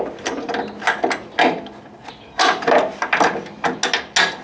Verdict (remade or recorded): recorded